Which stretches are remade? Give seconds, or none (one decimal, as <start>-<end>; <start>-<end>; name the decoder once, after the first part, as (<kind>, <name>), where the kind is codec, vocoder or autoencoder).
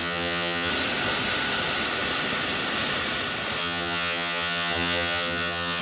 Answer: 0.0-0.7 (vocoder, HiFi-GAN); 3.6-5.8